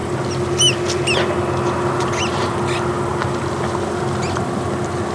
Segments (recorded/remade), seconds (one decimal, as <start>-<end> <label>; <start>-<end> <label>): 0.0-5.1 recorded